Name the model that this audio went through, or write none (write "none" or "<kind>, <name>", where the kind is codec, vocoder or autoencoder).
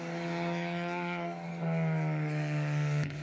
codec, DAC